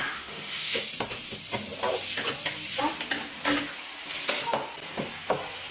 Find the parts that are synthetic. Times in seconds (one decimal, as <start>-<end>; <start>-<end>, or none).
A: 0.0-0.8

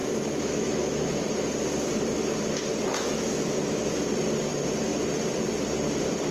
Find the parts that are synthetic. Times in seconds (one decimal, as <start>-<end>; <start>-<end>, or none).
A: 0.0-1.2; 2.9-3.9

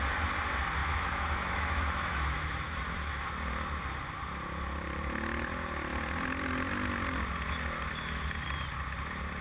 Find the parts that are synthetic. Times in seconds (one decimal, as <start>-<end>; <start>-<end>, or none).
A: 0.8-3.3

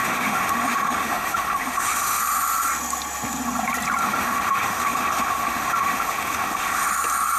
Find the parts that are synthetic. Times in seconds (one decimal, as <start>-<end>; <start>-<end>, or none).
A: 0.0-2.2; 4.0-6.9

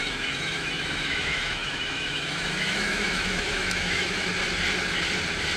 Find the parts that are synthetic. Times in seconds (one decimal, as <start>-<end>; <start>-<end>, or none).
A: 0.0-4.3